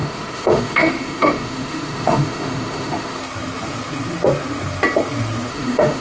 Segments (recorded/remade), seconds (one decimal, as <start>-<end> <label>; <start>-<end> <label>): 0.0-3.2 remade; 3.2-5.5 recorded; 5.5-6.0 remade